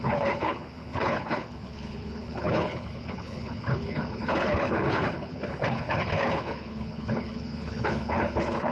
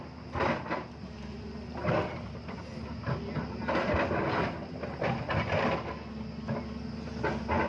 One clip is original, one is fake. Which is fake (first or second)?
first